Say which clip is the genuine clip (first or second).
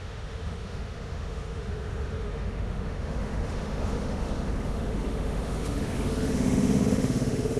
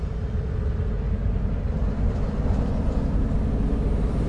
second